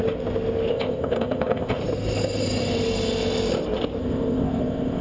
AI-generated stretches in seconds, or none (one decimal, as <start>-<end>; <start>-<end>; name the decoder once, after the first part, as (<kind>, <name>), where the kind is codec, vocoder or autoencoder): 0.7-1.8 (codec, ZipCodec); 4.0-5.0